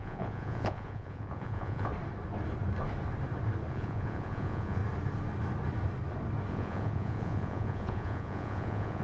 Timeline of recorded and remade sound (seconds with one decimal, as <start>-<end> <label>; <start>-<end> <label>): 0.0-1.9 remade; 1.9-3.7 recorded; 3.7-4.8 remade; 4.8-6.5 recorded; 6.5-9.0 remade